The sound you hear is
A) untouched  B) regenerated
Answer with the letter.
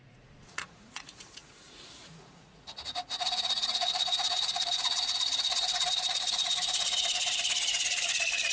B